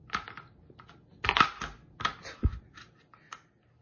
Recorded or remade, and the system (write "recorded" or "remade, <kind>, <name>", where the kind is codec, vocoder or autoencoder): recorded